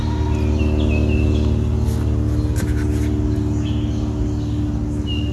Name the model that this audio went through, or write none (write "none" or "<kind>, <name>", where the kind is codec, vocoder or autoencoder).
none